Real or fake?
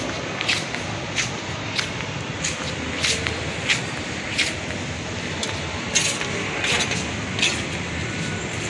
real